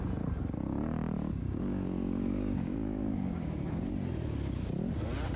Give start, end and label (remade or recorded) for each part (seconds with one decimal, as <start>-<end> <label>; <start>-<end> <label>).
0.0-1.4 recorded; 1.4-3.9 remade; 3.9-5.4 recorded